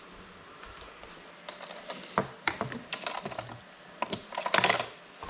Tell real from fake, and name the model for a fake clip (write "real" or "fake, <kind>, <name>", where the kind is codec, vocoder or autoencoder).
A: real